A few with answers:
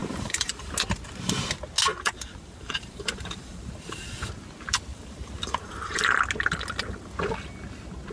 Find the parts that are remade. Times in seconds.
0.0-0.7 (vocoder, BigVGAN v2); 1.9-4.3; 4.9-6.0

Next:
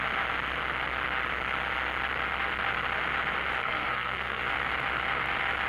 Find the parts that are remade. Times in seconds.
3.6-4.4 (codec, SNAC)

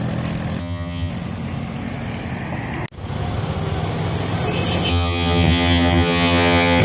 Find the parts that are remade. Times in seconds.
0.6-1.1 (vocoder, HiFi-GAN); 4.9-6.8

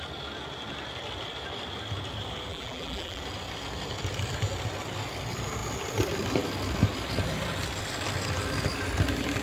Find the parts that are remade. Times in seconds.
2.5-3.2 (vocoder, BigVGAN v2)

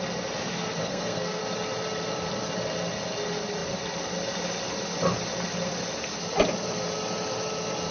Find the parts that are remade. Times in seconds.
0.8-1.4 (codec, SNAC)

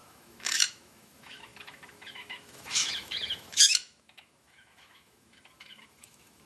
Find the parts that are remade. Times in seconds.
0.0-6.5 (autoencoder, DAC-VAE)

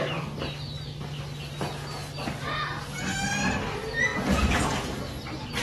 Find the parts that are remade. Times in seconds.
none

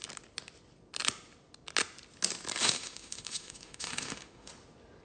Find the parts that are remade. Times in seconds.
2.6-4.5 (autoencoder, DAC-VAE)